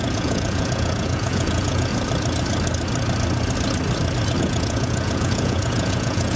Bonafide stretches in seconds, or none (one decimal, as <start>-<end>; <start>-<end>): 1.9-4.4